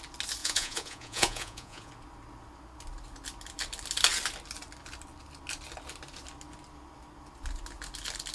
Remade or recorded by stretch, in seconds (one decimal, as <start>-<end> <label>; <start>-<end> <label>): 0.0-0.4 recorded; 0.4-1.9 remade; 1.9-8.3 recorded